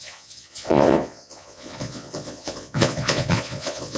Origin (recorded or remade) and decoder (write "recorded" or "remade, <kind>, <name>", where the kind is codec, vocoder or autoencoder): remade, vocoder, Vocos